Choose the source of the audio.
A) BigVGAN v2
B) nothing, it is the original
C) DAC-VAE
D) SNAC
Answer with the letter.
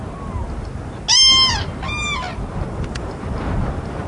B